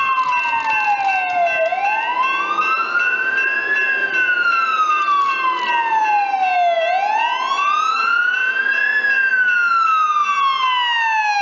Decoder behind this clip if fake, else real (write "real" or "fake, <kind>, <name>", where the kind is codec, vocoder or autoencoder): real